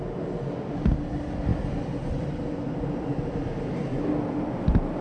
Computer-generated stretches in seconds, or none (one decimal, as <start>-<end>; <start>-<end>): 1.5-4.5